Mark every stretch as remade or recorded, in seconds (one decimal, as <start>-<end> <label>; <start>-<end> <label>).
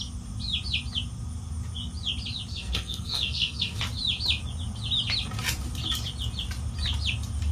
0.0-2.5 recorded; 2.5-3.8 remade; 3.8-7.5 recorded